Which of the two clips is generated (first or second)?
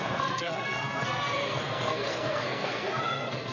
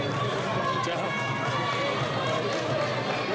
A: first